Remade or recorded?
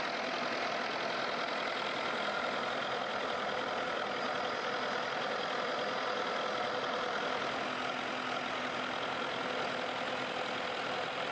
recorded